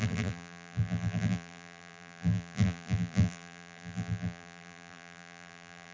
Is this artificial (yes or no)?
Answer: yes